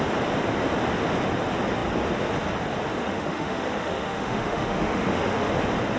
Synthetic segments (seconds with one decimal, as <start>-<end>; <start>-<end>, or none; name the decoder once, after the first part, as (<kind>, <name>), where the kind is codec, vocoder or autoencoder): 3.0-5.5 (autoencoder, DAC-VAE)